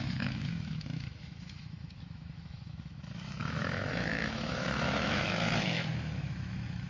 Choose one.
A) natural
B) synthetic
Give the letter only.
B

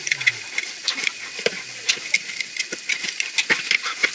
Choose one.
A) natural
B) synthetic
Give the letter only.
A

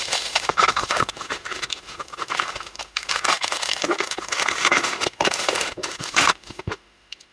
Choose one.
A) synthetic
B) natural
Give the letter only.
A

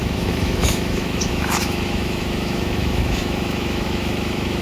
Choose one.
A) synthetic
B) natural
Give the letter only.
A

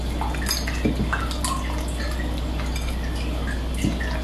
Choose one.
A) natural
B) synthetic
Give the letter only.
A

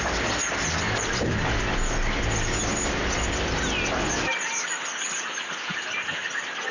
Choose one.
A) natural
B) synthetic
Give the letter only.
A